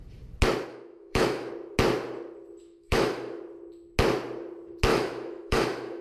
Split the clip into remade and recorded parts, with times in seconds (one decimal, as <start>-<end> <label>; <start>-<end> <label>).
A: 0.0-0.7 recorded; 0.7-1.5 remade; 1.5-2.6 recorded; 2.6-3.4 remade; 3.4-4.9 recorded; 4.9-6.0 remade